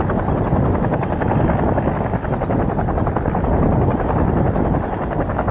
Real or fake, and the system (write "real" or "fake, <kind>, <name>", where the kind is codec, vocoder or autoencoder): real